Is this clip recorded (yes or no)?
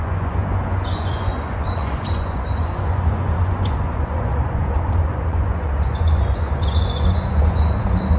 no